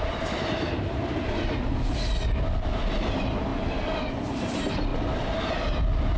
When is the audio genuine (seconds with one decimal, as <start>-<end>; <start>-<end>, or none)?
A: 0.0-6.2